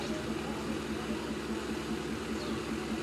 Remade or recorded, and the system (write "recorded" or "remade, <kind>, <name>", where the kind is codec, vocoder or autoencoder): recorded